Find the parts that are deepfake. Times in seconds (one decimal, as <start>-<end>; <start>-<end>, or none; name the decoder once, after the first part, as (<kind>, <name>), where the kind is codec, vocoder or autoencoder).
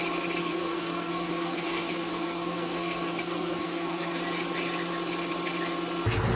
0.4-4.2 (codec, SNAC)